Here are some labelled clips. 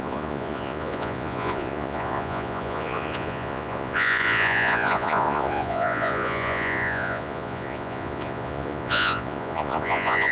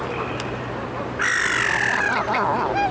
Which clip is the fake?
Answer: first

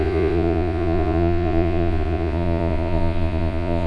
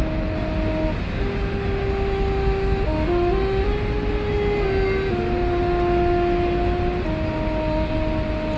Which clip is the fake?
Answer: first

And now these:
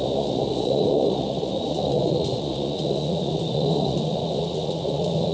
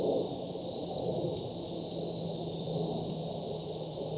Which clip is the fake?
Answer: first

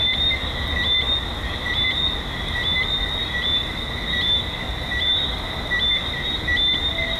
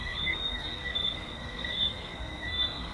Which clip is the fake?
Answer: second